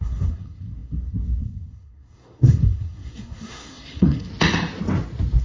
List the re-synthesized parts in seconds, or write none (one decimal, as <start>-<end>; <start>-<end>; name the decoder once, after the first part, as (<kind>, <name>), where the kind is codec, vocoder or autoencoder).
0.0-4.3 (codec, SNAC)